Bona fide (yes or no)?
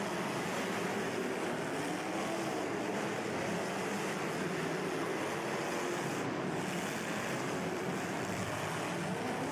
yes